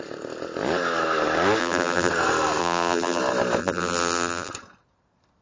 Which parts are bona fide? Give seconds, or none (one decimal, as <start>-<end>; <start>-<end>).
0.0-1.6; 2.1-2.6; 3.2-3.6; 4.5-5.4